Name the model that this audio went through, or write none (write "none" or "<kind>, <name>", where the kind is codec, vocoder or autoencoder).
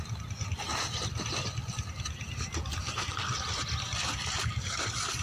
none